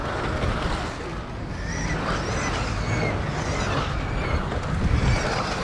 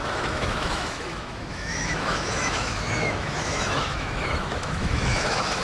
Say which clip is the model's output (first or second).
second